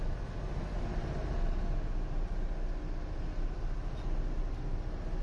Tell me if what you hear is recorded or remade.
recorded